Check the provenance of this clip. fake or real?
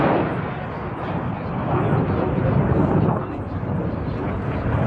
real